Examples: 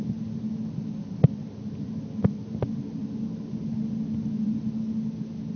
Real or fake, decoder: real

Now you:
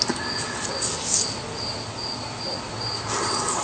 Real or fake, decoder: real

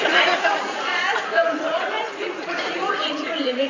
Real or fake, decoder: fake, vocoder, Vocos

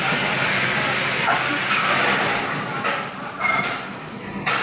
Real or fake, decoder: fake, vocoder, BigVGAN v2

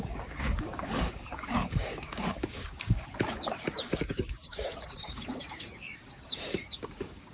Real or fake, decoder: fake, codec, DAC